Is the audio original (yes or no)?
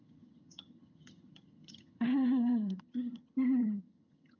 no